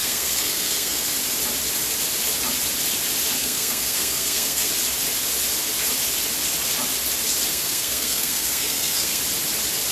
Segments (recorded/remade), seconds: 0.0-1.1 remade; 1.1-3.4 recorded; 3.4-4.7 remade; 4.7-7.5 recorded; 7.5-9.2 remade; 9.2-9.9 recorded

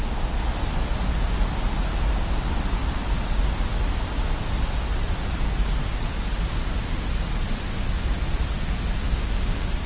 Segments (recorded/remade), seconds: 0.0-9.1 recorded; 9.1-9.9 remade